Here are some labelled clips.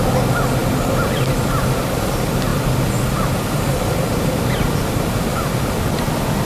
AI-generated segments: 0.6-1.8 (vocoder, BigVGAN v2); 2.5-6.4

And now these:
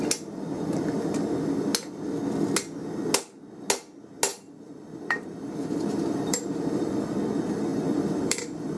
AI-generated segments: 4.3-6.9 (vocoder, BigVGAN v2); 7.7-8.8

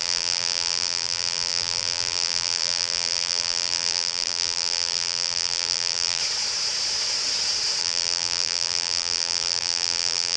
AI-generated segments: 0.0-6.2 (vocoder, BigVGAN v2); 7.8-10.4

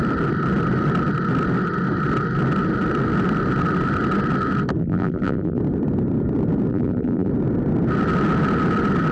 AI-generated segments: 4.8-5.6 (vocoder, BigVGAN v2); 6.7-7.3

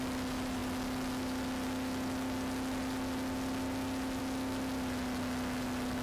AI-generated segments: none

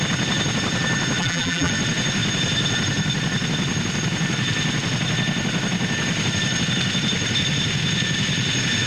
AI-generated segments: 1.2-1.7 (vocoder, BigVGAN v2)